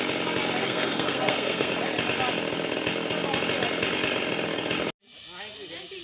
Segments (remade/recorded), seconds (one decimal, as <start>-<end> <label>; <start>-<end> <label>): 0.0-0.6 recorded; 0.6-1.7 remade; 1.7-6.0 recorded